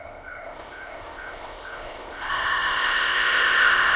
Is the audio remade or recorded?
remade